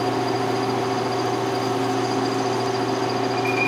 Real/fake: real